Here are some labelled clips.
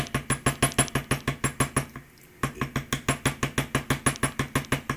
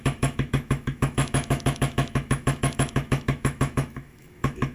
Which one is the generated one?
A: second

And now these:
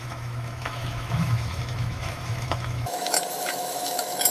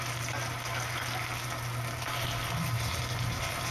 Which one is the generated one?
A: first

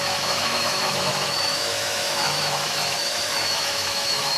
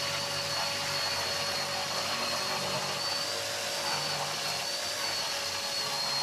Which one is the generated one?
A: first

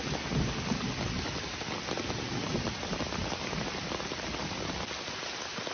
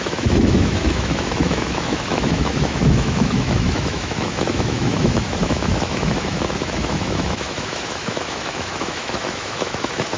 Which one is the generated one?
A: second